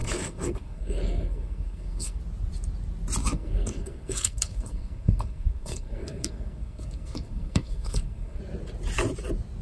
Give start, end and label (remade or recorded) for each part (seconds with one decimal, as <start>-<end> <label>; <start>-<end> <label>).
0.0-2.2 remade; 2.2-3.2 recorded; 3.2-8.4 remade; 8.4-9.6 recorded